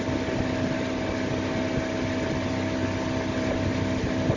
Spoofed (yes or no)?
no